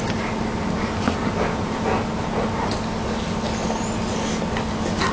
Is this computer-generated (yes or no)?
no